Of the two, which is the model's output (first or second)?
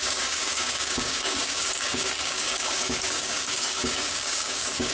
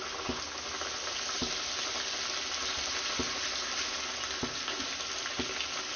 first